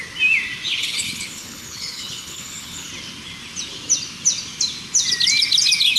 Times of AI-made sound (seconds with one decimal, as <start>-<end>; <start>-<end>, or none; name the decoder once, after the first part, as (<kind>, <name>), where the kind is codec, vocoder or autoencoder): 0.8-2.9 (codec, HILCodec)